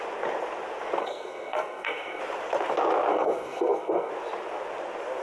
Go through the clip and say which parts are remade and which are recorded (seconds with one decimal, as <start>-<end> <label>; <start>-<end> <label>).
0.0-1.0 recorded; 1.0-2.2 remade; 2.2-3.1 recorded; 3.1-4.1 remade; 4.1-5.2 recorded